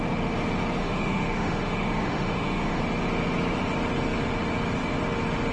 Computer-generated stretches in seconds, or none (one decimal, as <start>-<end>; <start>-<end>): 0.8-2.8